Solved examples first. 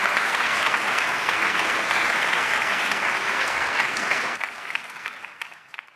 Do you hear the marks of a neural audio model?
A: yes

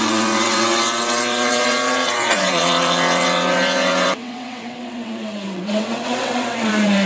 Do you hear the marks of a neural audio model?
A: yes